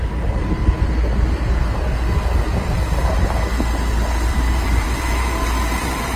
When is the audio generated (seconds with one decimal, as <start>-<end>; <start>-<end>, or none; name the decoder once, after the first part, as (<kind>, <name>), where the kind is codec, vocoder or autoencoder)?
0.0-0.6 (vocoder, BigVGAN v2); 4.3-6.2